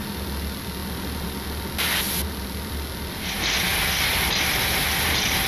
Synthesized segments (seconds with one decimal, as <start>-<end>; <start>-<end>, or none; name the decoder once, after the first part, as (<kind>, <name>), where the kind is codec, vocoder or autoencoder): none